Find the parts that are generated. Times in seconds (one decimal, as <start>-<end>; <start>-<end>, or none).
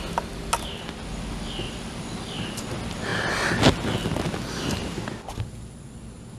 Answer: none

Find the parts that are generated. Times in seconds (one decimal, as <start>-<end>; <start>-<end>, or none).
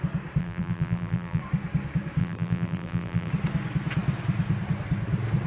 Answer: 0.4-1.4; 2.2-3.3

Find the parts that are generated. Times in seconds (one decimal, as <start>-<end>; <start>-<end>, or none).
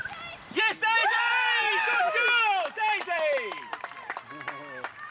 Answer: 0.0-0.6; 1.0-2.0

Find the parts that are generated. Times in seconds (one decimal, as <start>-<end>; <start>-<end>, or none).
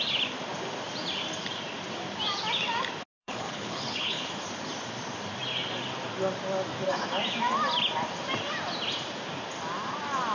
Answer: 3.2-4.3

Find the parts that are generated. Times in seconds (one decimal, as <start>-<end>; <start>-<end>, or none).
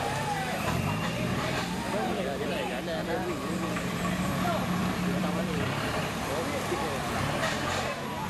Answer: 3.0-4.2; 4.8-6.0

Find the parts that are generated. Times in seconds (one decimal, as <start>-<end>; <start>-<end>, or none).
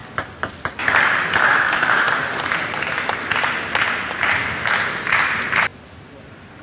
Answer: 1.5-2.1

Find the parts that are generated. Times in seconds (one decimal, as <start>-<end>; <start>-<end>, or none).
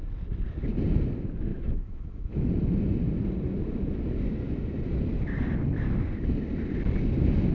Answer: 1.5-2.5